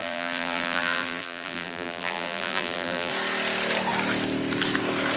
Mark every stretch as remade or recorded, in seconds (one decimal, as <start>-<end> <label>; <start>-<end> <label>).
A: 0.0-3.1 remade; 3.1-5.2 recorded